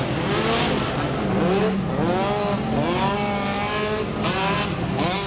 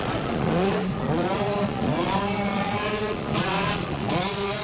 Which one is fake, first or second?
second